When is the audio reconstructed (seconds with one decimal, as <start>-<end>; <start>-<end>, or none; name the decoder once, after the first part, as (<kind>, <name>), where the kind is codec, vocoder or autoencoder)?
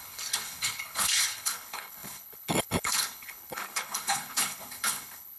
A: 0.0-5.4 (codec, HILCodec)